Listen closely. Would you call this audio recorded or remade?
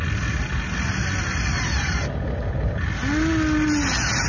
recorded